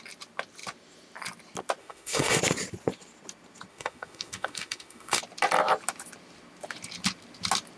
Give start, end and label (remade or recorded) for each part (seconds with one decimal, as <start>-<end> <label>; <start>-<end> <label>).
0.0-1.8 recorded; 1.8-2.4 remade; 2.4-3.7 recorded; 3.7-5.2 remade; 5.2-7.8 recorded